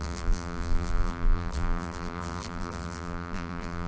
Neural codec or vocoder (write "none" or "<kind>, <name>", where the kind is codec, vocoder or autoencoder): vocoder, BigVGAN v2